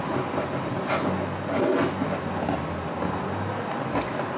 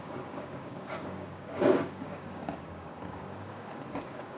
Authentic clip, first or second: first